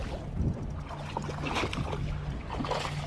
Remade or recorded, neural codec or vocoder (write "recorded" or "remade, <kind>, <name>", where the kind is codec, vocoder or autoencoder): recorded